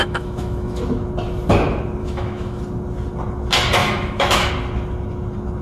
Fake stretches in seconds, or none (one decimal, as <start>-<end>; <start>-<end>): 0.0-0.8; 2.0-2.6; 3.8-4.5